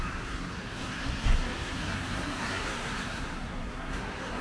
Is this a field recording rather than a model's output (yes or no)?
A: no